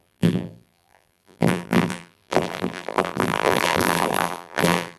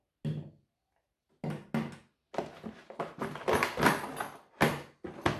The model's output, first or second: first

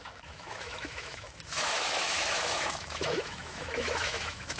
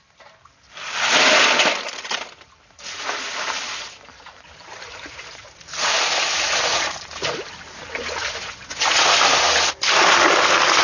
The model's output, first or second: first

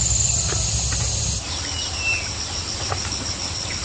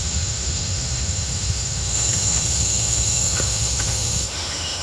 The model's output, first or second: second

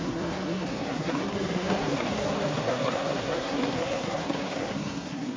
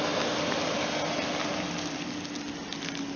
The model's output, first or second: first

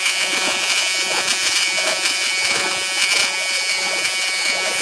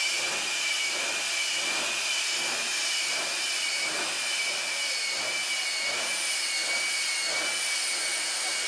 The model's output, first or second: first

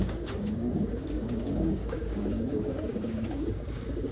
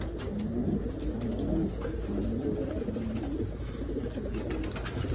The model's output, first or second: first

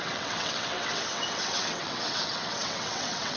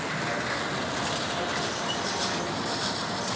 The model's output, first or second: first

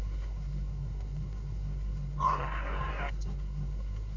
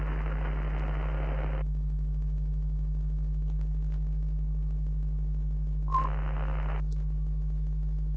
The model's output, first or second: first